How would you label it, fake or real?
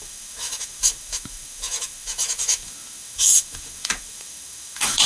fake